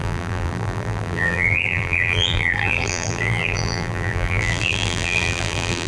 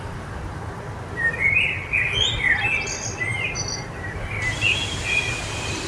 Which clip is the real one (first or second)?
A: second